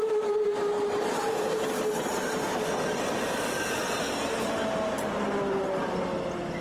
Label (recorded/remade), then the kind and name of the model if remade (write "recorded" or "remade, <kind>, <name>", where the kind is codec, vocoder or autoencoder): recorded